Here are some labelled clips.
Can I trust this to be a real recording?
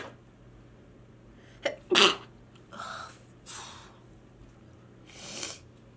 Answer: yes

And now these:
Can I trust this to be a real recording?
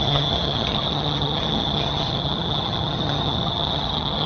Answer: no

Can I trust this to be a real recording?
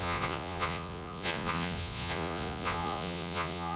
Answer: no